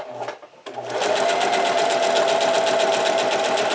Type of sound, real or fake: real